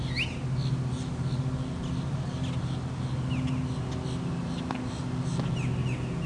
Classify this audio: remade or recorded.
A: recorded